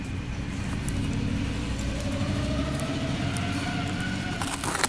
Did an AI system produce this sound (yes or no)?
no